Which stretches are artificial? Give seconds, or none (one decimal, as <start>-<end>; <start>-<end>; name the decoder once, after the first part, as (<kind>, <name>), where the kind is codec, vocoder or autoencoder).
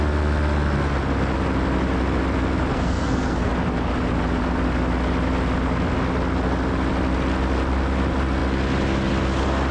2.7-3.5 (codec, SNAC)